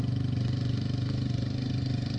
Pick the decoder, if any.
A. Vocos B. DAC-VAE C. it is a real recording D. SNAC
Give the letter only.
C